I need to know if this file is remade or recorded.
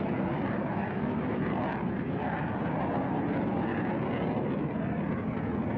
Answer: recorded